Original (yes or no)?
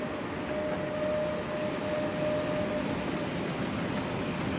yes